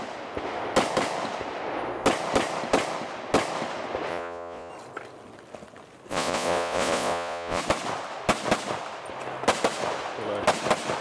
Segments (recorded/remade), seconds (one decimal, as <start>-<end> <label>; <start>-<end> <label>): 0.0-4.1 recorded; 4.1-4.7 remade; 4.7-6.1 recorded; 6.1-7.6 remade; 7.6-11.0 recorded